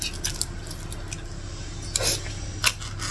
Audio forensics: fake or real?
real